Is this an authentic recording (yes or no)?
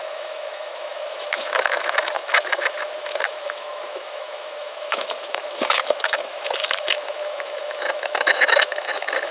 no